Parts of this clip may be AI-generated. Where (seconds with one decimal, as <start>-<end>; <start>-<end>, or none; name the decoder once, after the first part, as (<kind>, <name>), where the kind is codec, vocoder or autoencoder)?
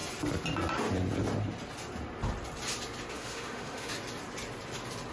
3.1-3.9 (autoencoder, DAC-VAE)